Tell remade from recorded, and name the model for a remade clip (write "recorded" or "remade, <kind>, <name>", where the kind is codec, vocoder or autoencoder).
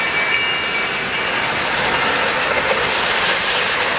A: recorded